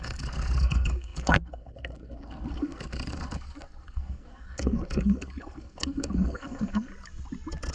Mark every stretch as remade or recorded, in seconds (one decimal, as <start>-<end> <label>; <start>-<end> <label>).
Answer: 0.0-6.9 remade; 6.9-7.7 recorded